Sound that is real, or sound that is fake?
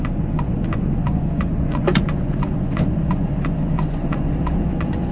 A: fake